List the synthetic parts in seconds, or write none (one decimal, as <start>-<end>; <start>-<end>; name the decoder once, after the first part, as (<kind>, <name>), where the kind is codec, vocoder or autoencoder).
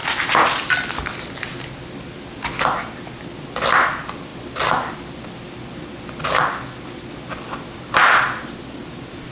none